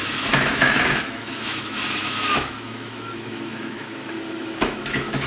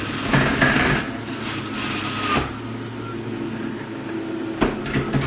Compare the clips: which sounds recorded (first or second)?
second